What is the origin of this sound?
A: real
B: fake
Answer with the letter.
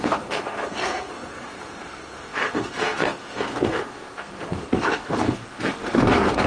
B